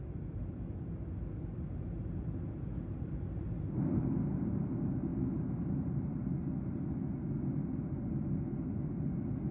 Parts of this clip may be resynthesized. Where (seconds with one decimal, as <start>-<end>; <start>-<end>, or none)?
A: none